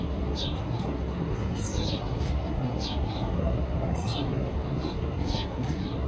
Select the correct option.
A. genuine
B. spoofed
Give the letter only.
B